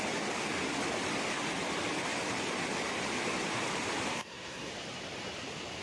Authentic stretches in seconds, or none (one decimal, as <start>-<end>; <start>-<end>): 0.0-4.1; 4.7-5.8